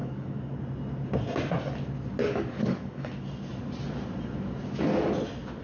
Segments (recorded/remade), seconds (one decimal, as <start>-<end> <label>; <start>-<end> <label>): 0.0-0.5 remade; 0.5-2.2 recorded; 2.2-3.1 remade; 3.1-5.6 recorded